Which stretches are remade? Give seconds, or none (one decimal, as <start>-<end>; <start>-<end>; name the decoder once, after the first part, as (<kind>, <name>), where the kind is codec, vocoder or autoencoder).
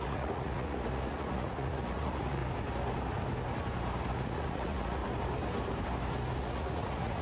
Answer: 0.0-2.4 (vocoder, Vocos); 4.1-5.0; 6.4-7.2